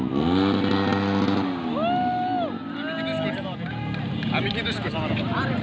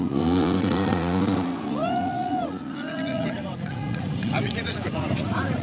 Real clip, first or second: first